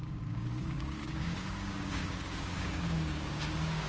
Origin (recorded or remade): remade